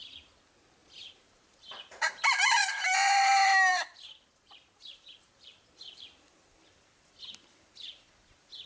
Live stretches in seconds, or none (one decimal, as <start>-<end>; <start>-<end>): 0.0-0.8; 3.2-3.7; 6.7-8.7